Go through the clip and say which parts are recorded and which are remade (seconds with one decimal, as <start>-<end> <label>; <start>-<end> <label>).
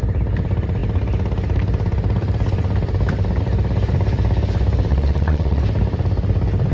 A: 0.0-4.9 recorded; 4.9-5.6 remade; 5.6-6.7 recorded